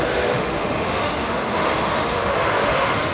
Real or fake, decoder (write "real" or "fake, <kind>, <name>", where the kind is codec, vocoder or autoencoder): fake, autoencoder, DAC-VAE